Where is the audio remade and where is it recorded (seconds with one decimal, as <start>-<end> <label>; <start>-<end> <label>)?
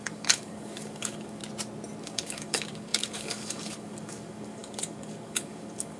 0.0-1.4 remade; 1.4-2.0 recorded; 2.0-6.0 remade